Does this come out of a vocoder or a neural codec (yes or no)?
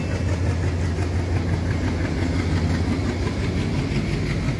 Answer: no